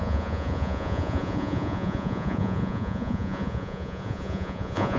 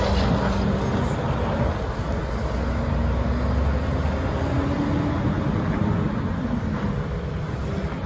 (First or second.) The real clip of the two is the second